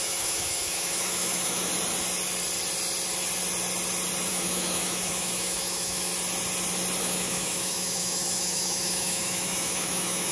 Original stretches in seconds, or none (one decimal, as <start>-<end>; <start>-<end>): 1.7-4.3; 6.1-7.0